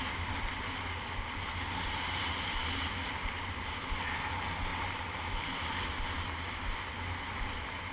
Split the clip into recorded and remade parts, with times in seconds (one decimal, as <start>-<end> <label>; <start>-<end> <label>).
0.0-7.9 recorded